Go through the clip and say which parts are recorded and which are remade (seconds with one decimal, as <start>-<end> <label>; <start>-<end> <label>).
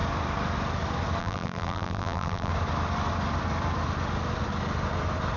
0.0-1.2 recorded; 1.2-2.5 remade; 2.5-5.4 recorded